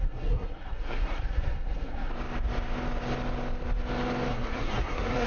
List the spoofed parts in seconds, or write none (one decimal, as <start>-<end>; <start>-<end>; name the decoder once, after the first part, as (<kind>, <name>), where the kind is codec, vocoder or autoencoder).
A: 0.0-2.1 (codec, SNAC); 4.3-5.3